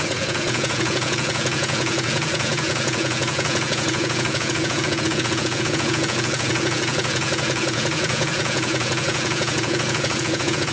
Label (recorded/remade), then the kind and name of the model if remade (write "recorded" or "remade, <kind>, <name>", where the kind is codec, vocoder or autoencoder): remade, vocoder, Vocos